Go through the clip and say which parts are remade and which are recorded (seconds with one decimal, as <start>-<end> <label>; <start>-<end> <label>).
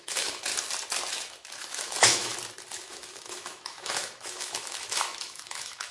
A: 0.0-0.5 remade; 0.5-1.1 recorded; 1.1-2.3 remade; 2.3-2.8 recorded; 2.8-5.9 remade